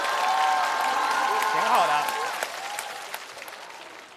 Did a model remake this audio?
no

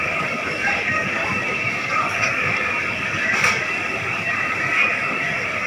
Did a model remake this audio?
yes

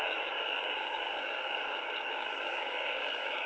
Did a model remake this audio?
yes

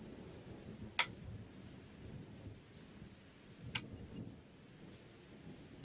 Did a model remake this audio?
no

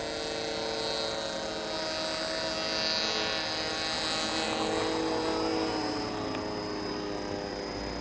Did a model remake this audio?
no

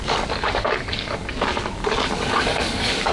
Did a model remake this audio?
yes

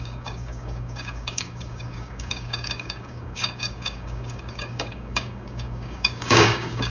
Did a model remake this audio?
yes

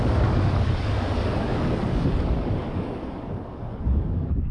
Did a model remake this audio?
yes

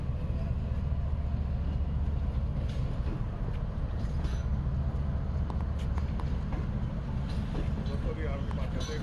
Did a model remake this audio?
no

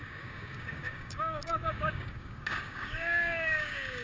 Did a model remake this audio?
yes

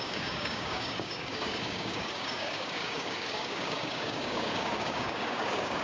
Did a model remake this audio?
yes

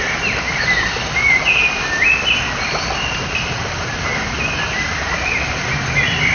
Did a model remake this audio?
no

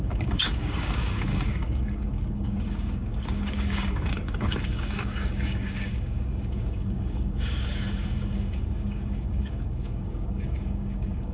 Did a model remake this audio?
yes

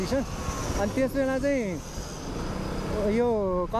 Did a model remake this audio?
no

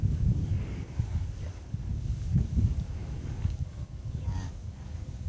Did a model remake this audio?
yes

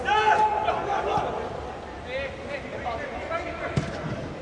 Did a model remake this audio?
no